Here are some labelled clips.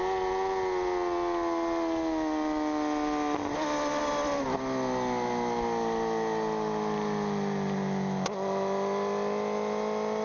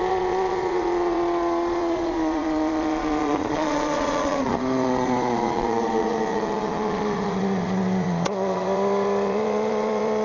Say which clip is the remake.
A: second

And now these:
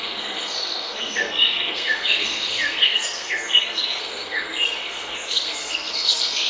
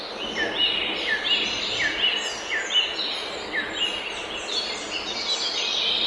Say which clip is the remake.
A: first